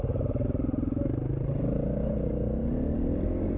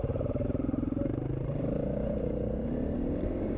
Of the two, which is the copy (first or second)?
second